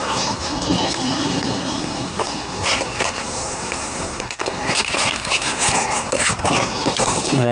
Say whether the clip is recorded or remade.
remade